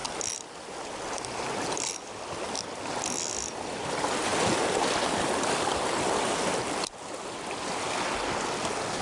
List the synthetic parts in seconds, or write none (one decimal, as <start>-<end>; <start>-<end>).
none